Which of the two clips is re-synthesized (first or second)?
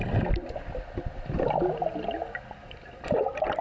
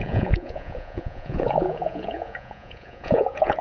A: second